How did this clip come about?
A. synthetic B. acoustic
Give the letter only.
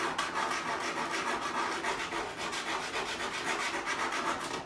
B